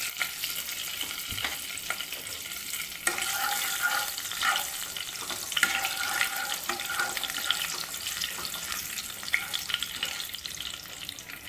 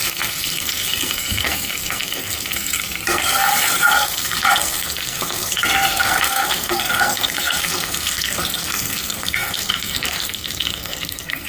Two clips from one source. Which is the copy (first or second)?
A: second